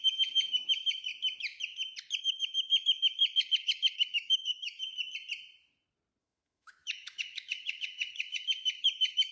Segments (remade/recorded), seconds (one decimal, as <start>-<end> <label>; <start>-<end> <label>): 0.0-1.1 remade; 1.1-2.2 recorded; 2.2-4.9 remade; 4.9-6.2 recorded; 6.2-9.3 remade